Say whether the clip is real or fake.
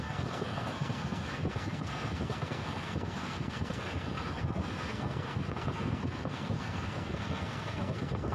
fake